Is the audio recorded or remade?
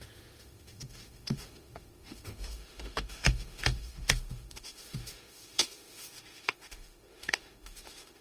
remade